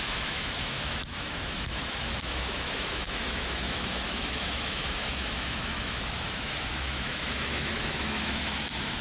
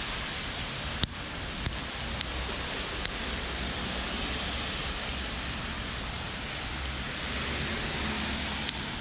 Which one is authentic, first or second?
second